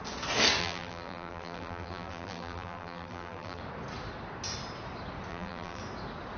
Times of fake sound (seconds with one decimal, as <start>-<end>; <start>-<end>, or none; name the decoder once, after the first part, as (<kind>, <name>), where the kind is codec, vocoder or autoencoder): 0.6-3.6 (vocoder, BigVGAN v2); 5.3-5.8